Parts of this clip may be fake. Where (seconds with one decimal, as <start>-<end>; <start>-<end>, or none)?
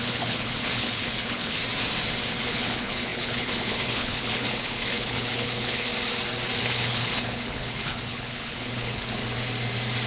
0.0-1.6; 2.4-5.9; 6.6-9.2